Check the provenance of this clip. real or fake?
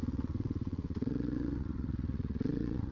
fake